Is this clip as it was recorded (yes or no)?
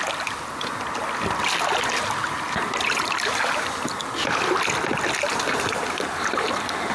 yes